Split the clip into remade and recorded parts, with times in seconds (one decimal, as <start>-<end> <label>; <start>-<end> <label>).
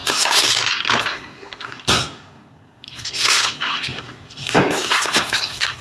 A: 0.0-5.8 remade